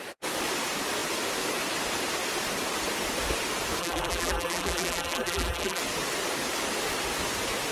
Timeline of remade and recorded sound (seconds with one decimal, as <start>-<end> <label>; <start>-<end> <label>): 0.0-3.8 recorded; 3.8-5.8 remade; 5.8-7.7 recorded